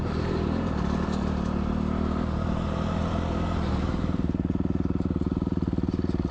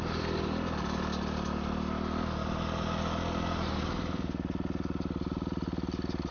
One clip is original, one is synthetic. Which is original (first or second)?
second